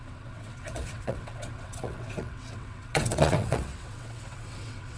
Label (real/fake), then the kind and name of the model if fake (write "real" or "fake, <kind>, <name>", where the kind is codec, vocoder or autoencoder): fake, vocoder, WaveNeXt